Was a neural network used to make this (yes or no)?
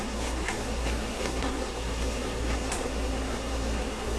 yes